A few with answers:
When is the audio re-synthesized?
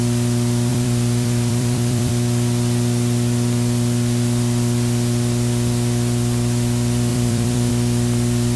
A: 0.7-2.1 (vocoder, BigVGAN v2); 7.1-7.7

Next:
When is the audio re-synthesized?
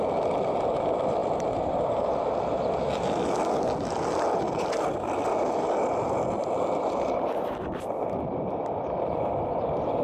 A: 1.2-2.1 (vocoder, BigVGAN v2)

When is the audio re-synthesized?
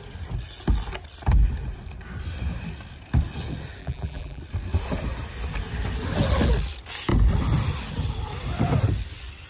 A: 3.8-4.4 (vocoder, BigVGAN v2)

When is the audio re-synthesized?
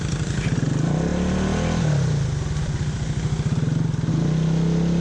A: none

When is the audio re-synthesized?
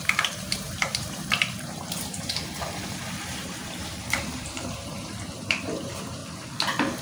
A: 0.0-6.2 (vocoder, BigVGAN v2)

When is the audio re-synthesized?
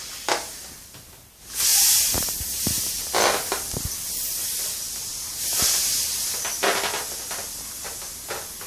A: 1.7-2.9 (vocoder, BigVGAN v2); 5.1-5.9